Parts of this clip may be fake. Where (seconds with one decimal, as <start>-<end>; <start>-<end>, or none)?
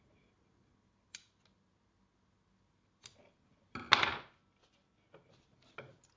none